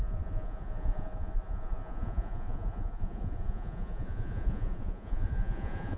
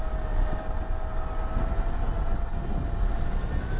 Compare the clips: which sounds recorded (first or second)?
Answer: second